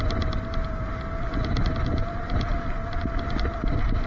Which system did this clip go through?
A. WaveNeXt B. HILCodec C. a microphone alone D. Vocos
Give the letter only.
C